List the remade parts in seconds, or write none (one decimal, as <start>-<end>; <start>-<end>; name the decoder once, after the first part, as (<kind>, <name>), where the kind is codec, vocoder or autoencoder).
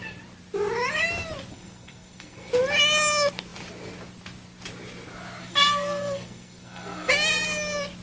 1.5-2.5 (codec, SNAC); 5.4-7.1